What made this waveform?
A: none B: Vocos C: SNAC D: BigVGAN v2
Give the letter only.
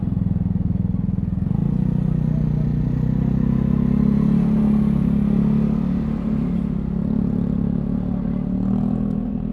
A